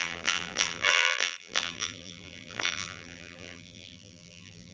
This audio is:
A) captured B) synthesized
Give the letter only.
B